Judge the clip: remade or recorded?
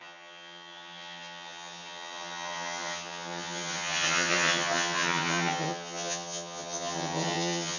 remade